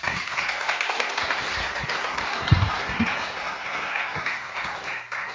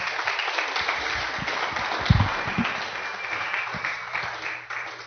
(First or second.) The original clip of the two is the second